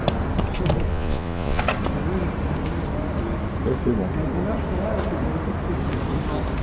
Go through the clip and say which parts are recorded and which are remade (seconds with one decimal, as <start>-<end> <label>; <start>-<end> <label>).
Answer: 0.0-0.9 recorded; 0.9-1.6 remade; 1.6-6.6 recorded